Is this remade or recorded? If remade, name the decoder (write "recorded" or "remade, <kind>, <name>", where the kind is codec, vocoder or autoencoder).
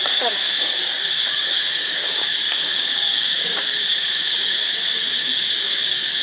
remade, codec, DAC